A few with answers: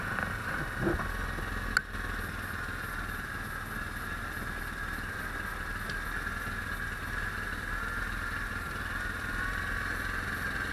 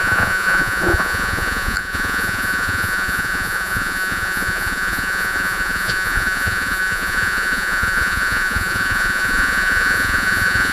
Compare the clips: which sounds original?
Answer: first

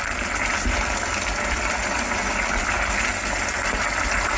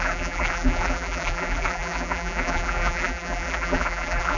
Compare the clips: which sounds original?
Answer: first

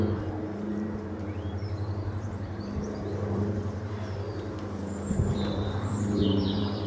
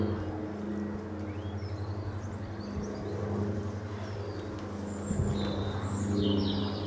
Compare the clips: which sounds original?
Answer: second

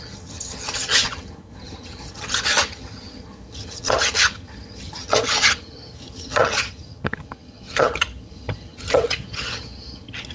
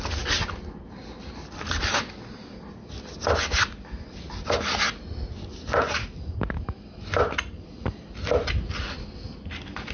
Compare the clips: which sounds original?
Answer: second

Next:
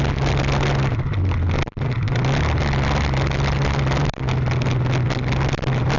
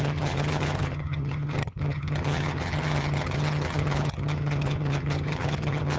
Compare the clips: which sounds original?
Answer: first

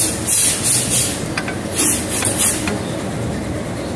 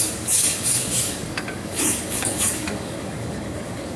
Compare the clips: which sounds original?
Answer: first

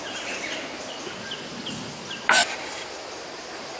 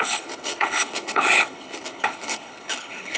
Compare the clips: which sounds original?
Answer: first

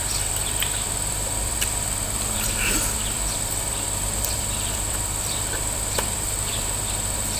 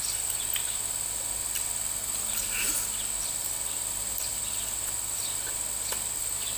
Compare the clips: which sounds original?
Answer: second